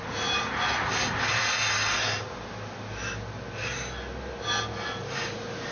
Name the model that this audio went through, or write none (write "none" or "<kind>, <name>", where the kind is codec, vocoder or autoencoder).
none